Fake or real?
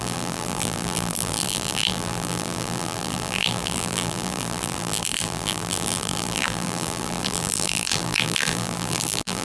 fake